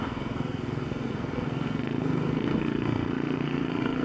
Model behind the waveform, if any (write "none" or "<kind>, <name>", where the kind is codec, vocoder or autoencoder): codec, SNAC